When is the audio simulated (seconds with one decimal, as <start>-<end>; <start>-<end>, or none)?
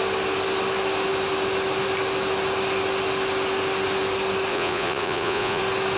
4.5-5.6